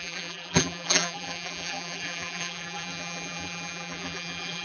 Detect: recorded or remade remade